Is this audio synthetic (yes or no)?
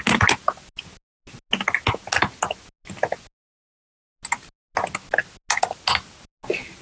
no